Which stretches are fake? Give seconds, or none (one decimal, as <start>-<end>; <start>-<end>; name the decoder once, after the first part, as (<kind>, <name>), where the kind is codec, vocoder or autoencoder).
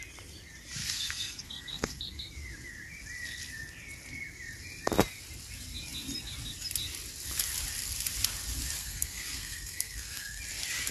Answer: 0.8-2.3 (codec, SNAC); 8.8-10.4